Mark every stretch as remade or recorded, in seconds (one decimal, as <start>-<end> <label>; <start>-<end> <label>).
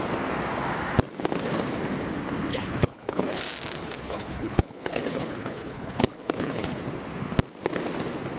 0.0-2.5 recorded; 2.5-3.4 remade; 3.4-3.8 recorded; 3.8-6.8 remade; 6.8-8.4 recorded